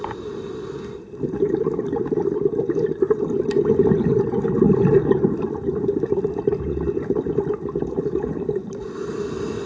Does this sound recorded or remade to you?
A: recorded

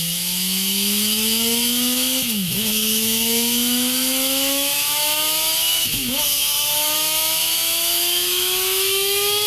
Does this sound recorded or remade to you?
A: remade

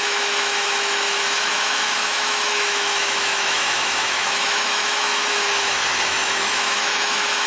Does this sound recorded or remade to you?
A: remade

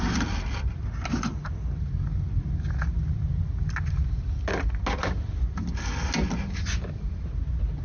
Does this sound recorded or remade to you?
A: recorded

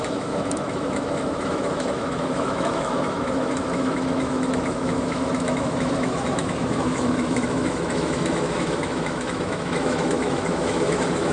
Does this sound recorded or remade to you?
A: remade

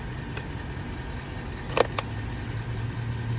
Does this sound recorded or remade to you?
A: recorded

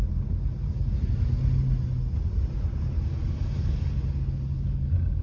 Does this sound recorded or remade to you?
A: recorded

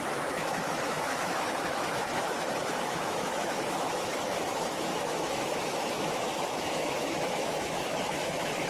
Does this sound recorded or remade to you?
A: remade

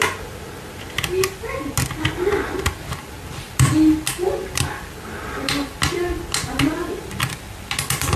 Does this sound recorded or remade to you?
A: recorded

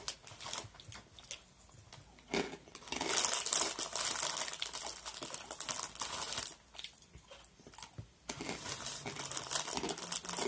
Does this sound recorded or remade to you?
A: recorded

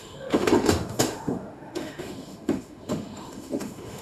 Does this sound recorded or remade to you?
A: remade